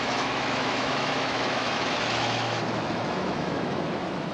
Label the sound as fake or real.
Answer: fake